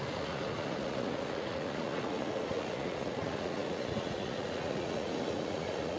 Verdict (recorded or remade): remade